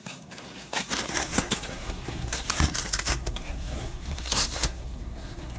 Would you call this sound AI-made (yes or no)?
yes